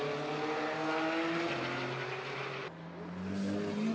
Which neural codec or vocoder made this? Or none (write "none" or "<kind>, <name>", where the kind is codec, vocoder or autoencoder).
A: none